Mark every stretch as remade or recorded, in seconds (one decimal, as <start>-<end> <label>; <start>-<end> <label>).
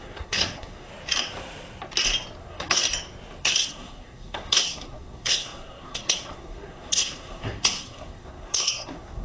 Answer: 0.0-0.9 remade; 0.9-2.4 recorded; 2.4-2.8 remade; 2.8-3.4 recorded; 3.4-9.2 remade